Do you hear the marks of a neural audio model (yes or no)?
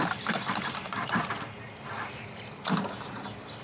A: no